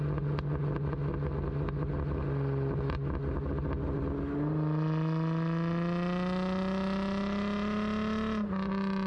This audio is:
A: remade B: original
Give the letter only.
B